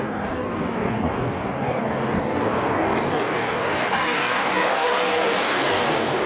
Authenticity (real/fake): fake